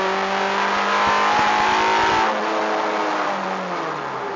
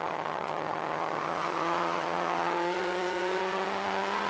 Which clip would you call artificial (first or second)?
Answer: second